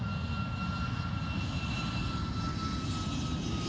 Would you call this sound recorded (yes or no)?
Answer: yes